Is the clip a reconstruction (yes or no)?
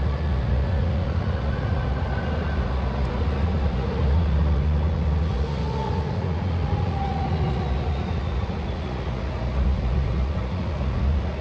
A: yes